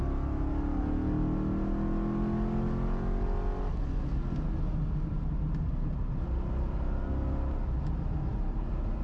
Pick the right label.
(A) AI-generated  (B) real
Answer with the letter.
B